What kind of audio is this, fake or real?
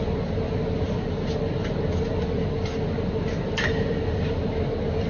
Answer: real